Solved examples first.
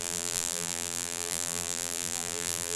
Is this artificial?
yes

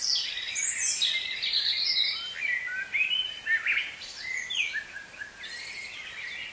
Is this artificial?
no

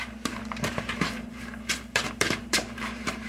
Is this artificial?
yes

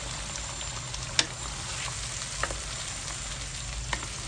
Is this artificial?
no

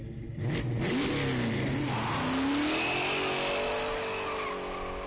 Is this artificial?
no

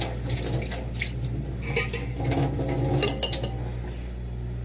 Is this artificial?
no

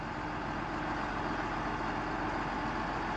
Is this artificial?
no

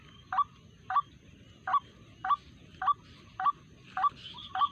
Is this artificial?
no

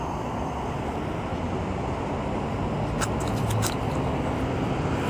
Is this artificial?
no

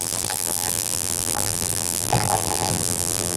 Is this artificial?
yes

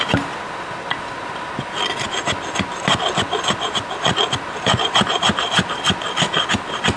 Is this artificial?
no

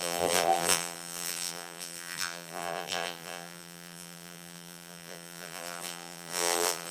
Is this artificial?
yes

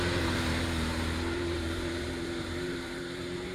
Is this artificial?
yes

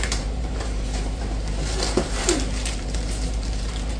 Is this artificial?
yes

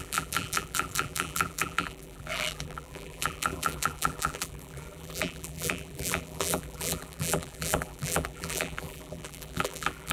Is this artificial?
yes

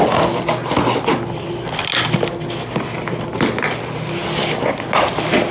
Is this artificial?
no